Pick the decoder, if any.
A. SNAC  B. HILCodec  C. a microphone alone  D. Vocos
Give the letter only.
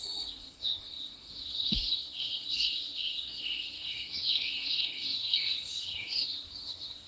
A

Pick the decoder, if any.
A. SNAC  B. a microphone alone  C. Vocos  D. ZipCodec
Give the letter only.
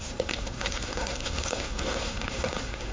A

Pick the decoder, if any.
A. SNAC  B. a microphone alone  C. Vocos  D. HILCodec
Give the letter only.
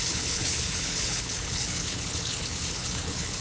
D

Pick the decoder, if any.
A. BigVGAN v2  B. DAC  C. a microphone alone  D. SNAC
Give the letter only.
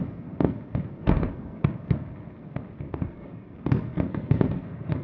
D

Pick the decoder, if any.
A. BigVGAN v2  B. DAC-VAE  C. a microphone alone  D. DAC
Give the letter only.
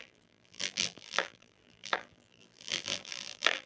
A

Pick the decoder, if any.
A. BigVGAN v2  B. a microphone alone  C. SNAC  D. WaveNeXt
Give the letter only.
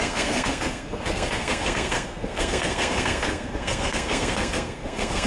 C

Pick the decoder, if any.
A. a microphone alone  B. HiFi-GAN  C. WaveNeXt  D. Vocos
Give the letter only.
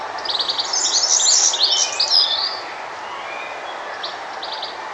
A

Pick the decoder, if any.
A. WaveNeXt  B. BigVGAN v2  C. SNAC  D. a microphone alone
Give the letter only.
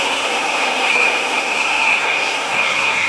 C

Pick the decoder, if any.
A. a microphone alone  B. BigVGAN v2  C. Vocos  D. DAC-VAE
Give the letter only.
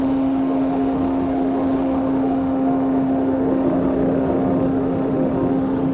D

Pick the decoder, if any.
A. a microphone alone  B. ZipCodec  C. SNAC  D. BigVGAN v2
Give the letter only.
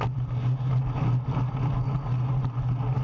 A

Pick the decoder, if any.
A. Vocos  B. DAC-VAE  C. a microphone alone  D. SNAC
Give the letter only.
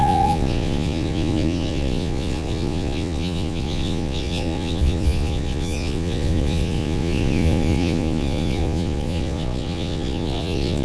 A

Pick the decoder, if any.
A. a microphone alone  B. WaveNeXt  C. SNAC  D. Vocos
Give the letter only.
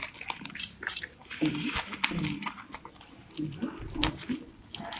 A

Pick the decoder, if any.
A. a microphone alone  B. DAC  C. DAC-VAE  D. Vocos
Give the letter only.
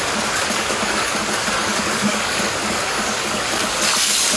B